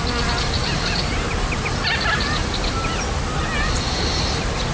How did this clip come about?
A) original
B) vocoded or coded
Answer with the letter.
A